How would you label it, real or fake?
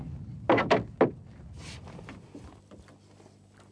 real